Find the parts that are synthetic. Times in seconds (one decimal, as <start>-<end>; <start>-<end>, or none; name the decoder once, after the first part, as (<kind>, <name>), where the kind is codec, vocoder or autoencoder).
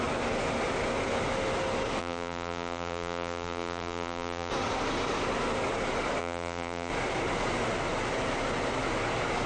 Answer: 2.0-4.5 (vocoder, BigVGAN v2); 6.2-6.9